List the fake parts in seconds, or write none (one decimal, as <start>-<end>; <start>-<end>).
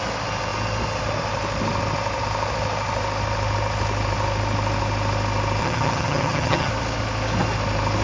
5.6-6.7